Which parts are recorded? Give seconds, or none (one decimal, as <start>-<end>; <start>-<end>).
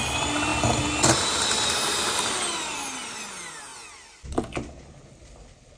0.0-5.8